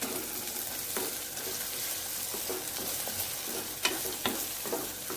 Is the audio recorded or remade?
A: recorded